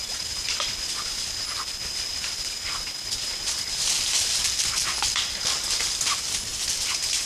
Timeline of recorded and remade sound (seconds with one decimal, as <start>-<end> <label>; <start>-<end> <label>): 0.0-7.3 recorded

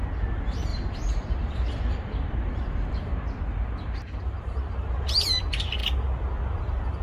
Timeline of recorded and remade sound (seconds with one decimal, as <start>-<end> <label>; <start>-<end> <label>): 0.0-0.7 recorded; 0.7-4.9 remade; 4.9-7.0 recorded

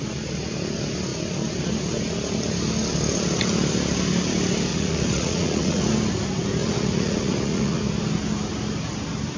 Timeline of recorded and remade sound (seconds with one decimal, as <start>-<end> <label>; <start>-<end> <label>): 0.0-4.7 recorded; 4.7-5.8 remade; 5.8-6.6 recorded; 6.6-7.8 remade; 7.8-9.4 recorded

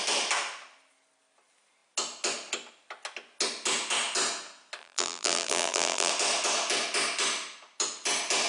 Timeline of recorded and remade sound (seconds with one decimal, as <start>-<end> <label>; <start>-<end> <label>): 0.0-4.8 recorded; 4.8-6.1 remade; 6.1-8.5 recorded

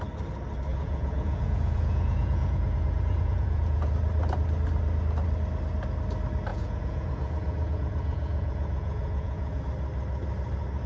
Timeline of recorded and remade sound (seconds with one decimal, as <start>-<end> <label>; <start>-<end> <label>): 0.0-0.7 recorded; 0.7-3.9 remade; 3.9-6.5 recorded; 6.5-9.6 remade; 9.6-10.9 recorded